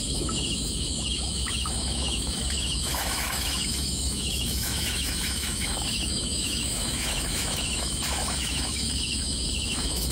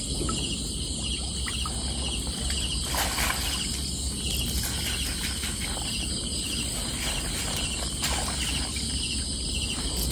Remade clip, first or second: first